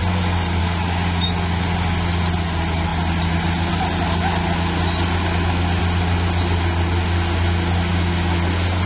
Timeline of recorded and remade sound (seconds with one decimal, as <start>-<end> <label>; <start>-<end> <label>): 0.0-8.9 recorded